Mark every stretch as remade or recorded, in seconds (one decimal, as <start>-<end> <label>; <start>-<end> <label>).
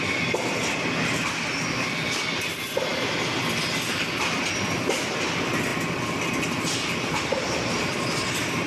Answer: 0.0-8.7 recorded